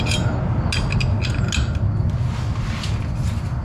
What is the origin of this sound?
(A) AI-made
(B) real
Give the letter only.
B